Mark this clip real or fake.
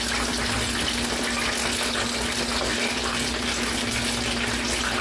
real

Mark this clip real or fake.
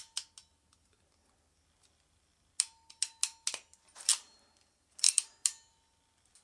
real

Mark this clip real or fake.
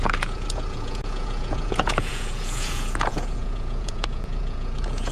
fake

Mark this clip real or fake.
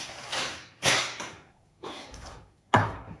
fake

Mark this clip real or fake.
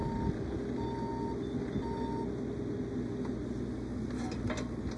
real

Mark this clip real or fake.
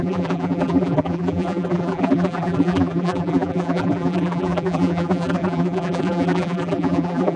fake